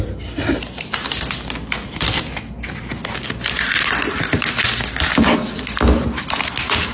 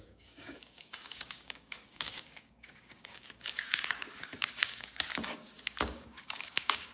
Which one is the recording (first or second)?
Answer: first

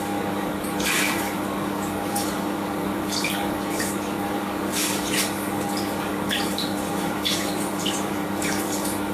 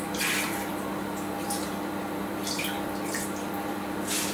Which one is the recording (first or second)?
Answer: second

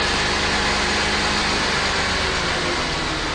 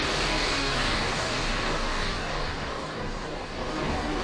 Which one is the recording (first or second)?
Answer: first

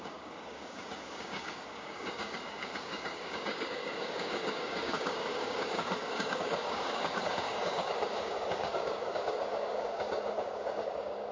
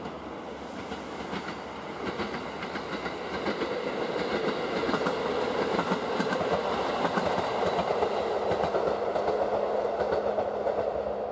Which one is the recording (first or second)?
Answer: second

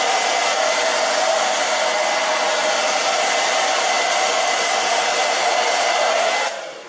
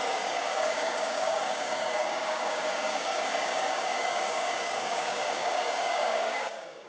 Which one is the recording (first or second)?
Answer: first